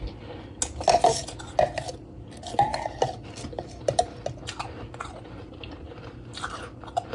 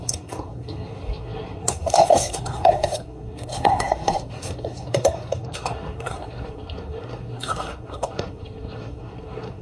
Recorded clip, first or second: first